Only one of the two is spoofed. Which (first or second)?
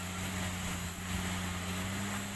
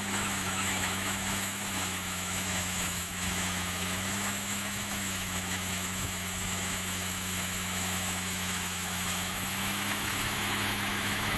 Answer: second